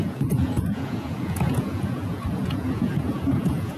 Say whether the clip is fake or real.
fake